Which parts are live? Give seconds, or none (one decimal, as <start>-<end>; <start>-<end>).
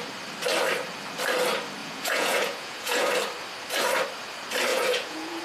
0.0-1.8; 3.1-4.7